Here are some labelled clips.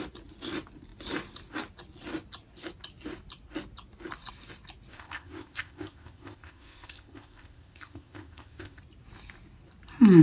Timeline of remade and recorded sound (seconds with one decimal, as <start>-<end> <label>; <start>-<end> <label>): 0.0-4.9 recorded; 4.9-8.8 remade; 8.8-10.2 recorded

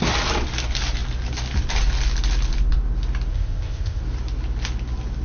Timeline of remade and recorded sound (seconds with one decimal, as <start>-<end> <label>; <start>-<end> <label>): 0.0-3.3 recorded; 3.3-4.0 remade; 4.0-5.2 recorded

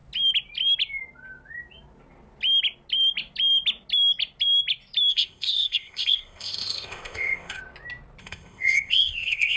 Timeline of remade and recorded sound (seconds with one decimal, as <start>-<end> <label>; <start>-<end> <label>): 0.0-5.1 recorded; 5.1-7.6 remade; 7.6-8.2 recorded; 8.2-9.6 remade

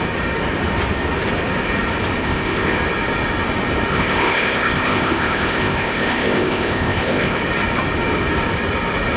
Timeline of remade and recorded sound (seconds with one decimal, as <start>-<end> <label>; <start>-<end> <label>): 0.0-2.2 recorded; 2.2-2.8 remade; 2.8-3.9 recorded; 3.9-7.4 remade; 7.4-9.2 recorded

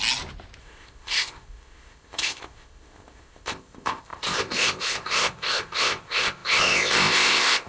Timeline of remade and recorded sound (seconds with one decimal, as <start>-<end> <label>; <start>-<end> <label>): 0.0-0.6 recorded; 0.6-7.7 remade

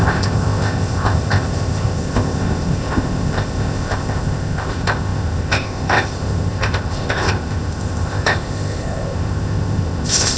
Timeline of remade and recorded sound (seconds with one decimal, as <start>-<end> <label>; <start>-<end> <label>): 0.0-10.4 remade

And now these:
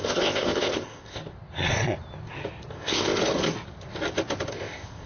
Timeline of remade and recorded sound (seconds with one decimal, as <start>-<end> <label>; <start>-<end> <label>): 0.0-1.2 remade; 1.2-2.7 recorded; 2.7-3.2 remade; 3.2-4.5 recorded; 4.5-5.1 remade

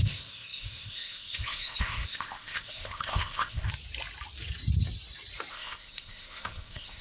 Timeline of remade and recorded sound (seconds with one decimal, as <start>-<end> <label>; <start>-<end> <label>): 0.0-3.7 remade; 3.7-5.5 recorded; 5.5-7.0 remade